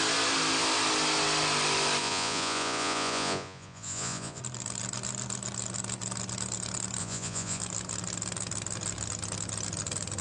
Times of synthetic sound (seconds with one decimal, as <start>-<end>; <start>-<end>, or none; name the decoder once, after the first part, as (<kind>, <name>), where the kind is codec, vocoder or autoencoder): 2.0-4.4 (vocoder, Vocos); 7.0-7.6